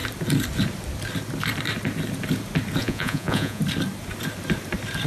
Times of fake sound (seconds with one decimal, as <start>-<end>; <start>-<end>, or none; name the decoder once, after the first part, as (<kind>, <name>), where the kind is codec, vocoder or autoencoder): 2.8-3.6 (vocoder, Vocos)